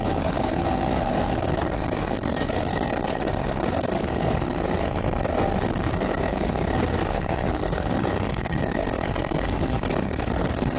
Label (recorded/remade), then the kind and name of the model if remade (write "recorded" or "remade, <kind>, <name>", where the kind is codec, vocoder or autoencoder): remade, codec, SNAC